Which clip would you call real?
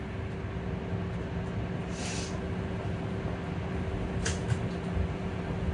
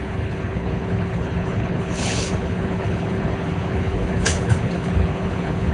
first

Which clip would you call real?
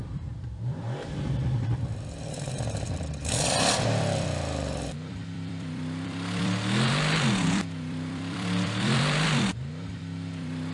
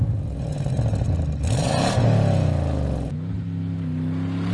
second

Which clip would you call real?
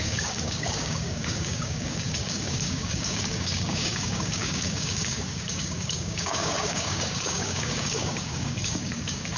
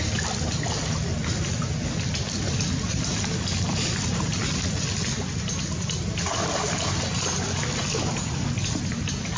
second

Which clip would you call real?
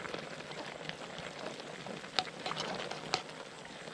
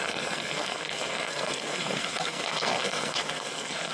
first